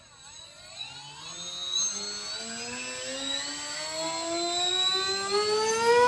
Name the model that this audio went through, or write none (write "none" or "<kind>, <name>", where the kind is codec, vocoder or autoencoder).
none